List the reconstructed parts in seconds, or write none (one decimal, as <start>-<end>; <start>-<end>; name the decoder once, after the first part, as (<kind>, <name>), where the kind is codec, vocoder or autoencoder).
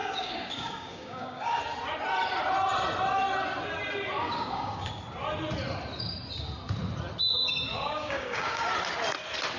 0.0-1.6 (codec, DAC); 4.2-5.0; 7.7-8.6